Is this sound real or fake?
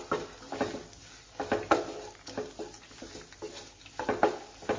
real